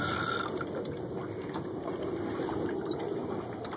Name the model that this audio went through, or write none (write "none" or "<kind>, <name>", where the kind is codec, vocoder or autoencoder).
none